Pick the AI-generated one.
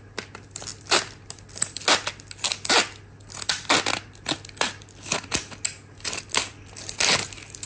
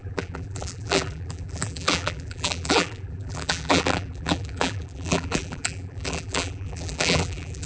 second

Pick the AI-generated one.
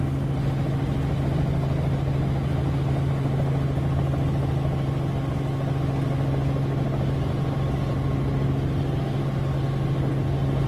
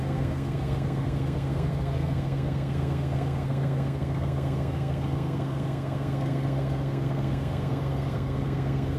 second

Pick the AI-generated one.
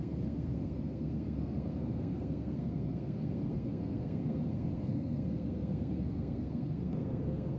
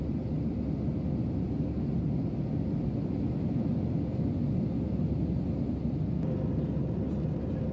first